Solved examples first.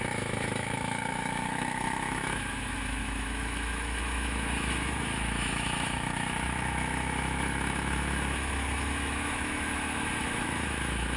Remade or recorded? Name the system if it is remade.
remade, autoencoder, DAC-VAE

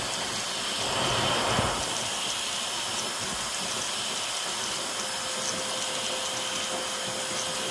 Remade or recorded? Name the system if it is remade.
recorded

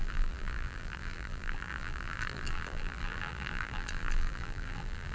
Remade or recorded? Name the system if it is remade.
remade, vocoder, BigVGAN v2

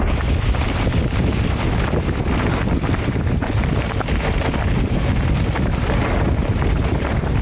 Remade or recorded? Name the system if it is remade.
recorded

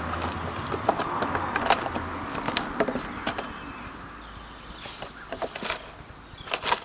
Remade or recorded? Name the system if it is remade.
recorded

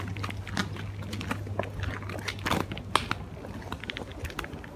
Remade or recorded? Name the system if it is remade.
recorded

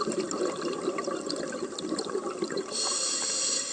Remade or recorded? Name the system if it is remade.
recorded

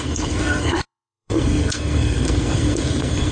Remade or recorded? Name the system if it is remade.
remade, codec, SNAC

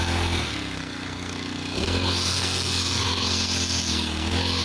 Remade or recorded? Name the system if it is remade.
remade, codec, SNAC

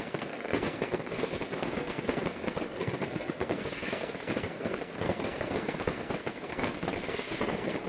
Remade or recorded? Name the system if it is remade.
remade, codec, SNAC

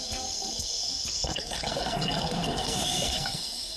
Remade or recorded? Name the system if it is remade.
remade, codec, SNAC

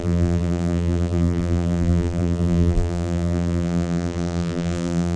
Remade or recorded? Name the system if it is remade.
remade, vocoder, BigVGAN v2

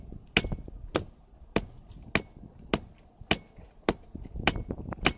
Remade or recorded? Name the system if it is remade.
recorded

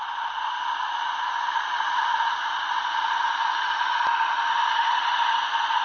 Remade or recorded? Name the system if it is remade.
recorded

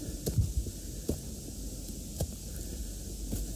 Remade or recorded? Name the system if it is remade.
recorded